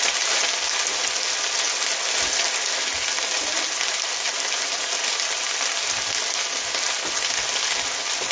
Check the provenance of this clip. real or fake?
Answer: real